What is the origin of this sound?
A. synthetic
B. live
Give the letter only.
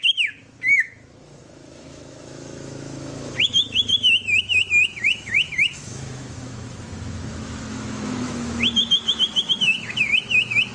A